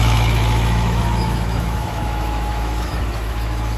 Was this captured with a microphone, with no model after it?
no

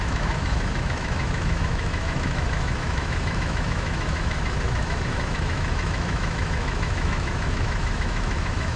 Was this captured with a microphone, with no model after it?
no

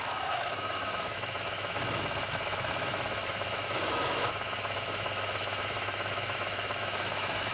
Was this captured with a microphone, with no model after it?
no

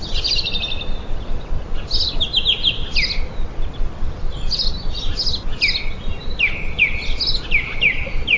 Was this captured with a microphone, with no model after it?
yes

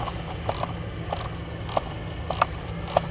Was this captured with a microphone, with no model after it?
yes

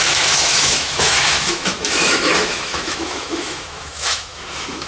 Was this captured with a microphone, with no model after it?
no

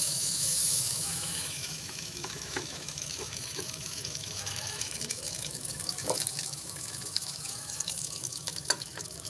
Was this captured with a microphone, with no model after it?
no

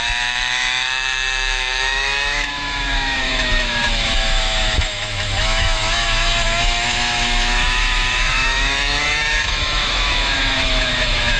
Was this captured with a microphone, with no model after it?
no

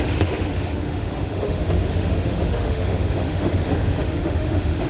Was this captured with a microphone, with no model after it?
no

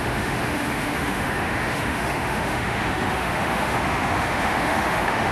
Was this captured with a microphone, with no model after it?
no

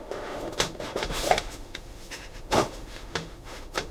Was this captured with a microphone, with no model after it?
no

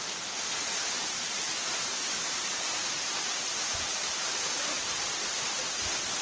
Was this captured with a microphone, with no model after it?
yes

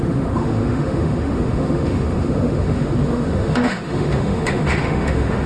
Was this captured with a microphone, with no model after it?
no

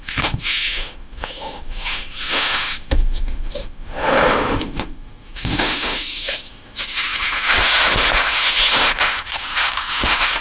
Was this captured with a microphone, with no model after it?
no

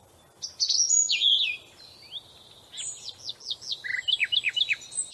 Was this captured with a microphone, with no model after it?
yes